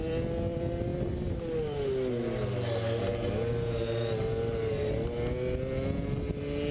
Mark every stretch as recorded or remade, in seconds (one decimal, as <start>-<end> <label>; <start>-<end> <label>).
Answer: 0.0-6.7 recorded